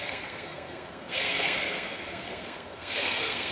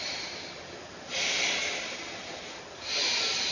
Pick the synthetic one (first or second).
first